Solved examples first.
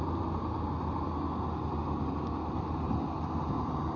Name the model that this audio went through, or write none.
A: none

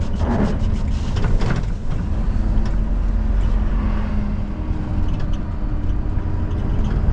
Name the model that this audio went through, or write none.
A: none